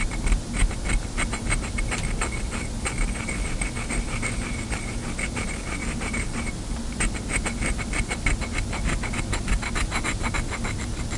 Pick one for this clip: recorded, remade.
recorded